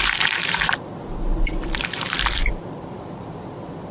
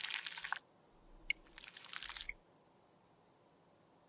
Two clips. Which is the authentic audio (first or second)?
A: second